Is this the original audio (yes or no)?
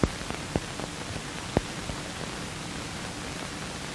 yes